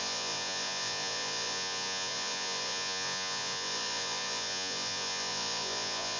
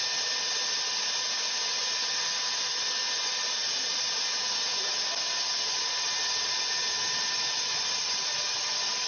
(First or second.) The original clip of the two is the second